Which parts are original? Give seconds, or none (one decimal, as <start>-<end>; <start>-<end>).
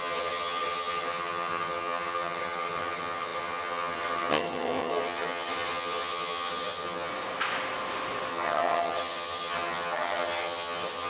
7.1-8.3